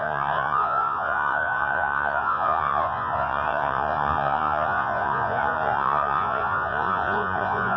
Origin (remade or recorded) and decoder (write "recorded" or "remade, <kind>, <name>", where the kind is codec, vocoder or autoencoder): remade, vocoder, Vocos